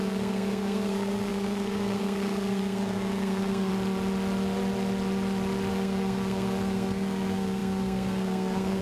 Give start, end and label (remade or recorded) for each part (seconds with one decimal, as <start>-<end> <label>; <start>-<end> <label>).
0.0-3.7 remade; 3.7-5.7 recorded; 5.7-8.8 remade